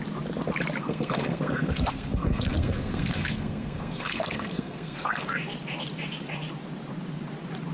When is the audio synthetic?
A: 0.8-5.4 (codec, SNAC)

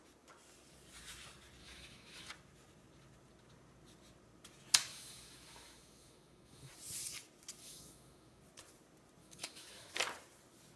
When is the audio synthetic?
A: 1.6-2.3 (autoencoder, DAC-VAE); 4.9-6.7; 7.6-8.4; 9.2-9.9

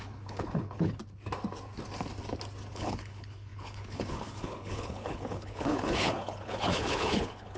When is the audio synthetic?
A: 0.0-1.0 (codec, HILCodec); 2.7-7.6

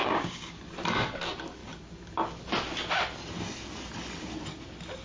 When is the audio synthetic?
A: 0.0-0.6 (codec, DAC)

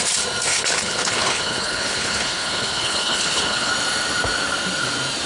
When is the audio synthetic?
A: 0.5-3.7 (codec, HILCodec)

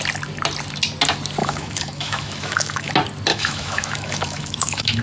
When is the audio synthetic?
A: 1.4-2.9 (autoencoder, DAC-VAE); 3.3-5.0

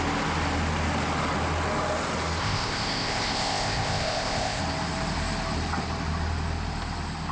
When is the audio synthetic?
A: 2.4-4.6 (codec, ZipCodec)